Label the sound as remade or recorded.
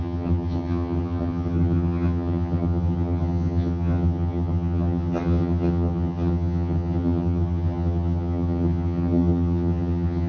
remade